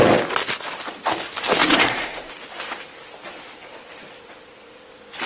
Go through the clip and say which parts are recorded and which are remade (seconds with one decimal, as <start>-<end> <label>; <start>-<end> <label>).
0.0-1.6 recorded; 1.6-2.3 remade; 2.3-5.3 recorded